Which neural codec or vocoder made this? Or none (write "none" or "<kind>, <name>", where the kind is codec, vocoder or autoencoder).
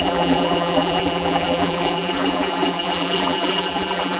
vocoder, BigVGAN v2